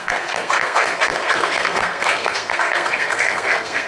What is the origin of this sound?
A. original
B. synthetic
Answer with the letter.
B